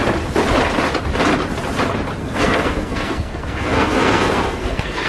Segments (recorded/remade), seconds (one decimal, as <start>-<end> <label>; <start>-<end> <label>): 0.0-2.2 recorded; 2.2-5.1 remade